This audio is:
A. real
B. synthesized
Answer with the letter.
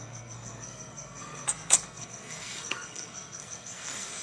B